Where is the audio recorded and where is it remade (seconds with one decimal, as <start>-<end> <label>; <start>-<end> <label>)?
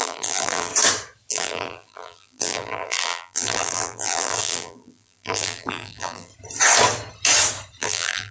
0.0-0.7 remade; 0.7-1.3 recorded; 1.3-6.3 remade; 6.3-7.8 recorded; 7.8-8.3 remade